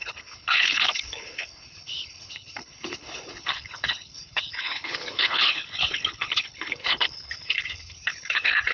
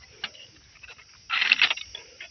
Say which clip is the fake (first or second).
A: first